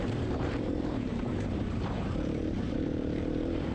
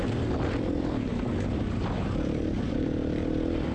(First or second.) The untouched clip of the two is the second